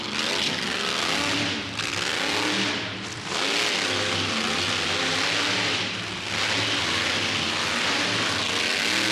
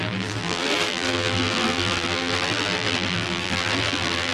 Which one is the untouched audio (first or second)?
first